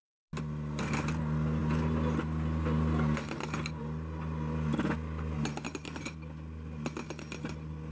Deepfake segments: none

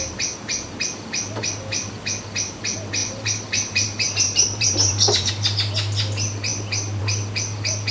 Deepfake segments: 3.0-5.3 (vocoder, BigVGAN v2)

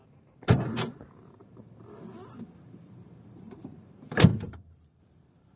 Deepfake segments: 0.0-1.4 (vocoder, BigVGAN v2); 2.3-5.6

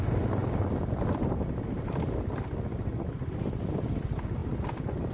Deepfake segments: none

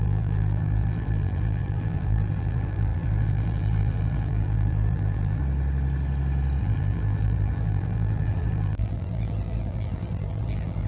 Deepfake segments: 0.0-5.4 (vocoder, BigVGAN v2); 6.6-10.9

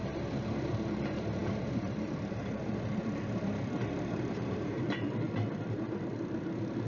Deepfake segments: 0.0-6.9 (vocoder, BigVGAN v2)

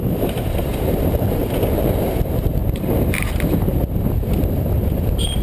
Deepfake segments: 0.0-1.4 (vocoder, BigVGAN v2); 2.2-5.4

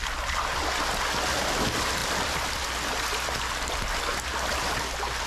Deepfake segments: none